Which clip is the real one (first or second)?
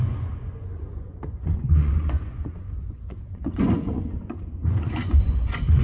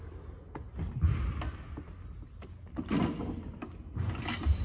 second